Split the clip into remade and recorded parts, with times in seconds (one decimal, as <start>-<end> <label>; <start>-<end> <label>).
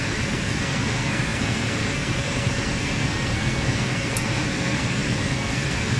0.0-6.0 remade